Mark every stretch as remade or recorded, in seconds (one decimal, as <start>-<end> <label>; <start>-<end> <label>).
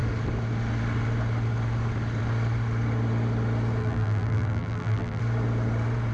0.0-3.8 recorded; 3.8-5.2 remade; 5.2-6.1 recorded